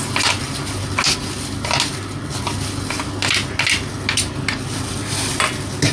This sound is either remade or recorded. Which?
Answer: recorded